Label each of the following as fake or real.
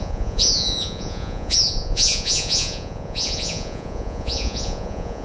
fake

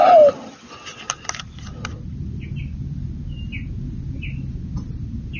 real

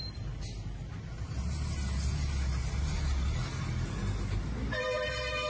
real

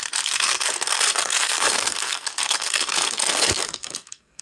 fake